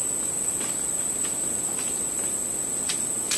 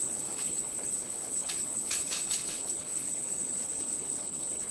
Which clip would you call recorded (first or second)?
first